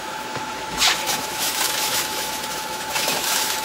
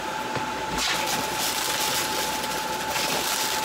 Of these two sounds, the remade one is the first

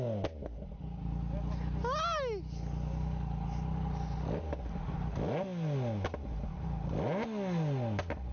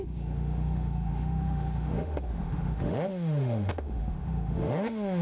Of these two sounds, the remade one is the second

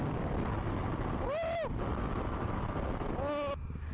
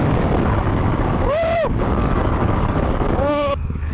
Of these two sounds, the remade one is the second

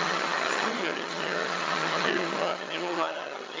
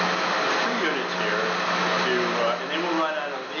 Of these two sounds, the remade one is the first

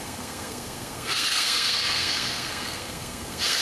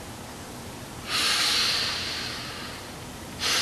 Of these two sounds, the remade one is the first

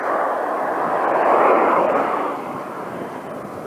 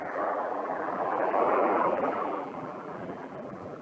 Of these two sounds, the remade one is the second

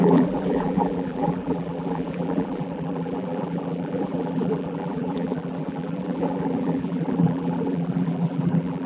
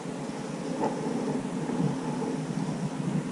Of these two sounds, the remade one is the first